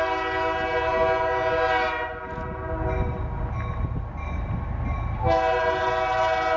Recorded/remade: recorded